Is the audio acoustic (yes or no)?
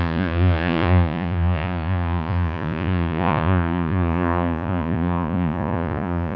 no